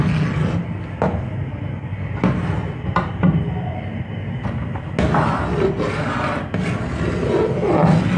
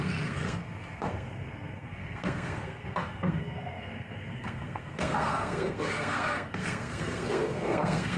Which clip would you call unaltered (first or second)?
first